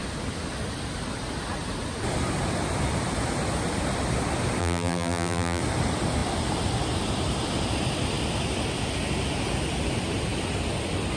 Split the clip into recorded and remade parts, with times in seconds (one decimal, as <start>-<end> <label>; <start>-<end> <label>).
0.0-4.6 recorded; 4.6-5.6 remade; 5.6-11.2 recorded